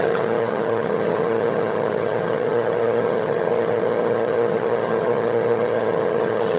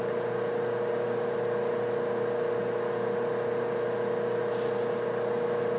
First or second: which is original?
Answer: second